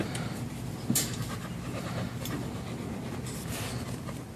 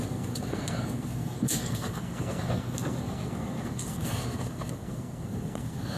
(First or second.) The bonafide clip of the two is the first